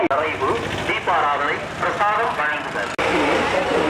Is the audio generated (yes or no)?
no